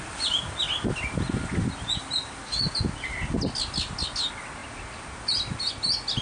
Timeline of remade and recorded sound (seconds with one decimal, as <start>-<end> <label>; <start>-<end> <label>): 0.0-6.2 recorded